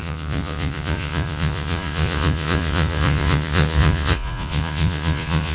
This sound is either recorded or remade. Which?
remade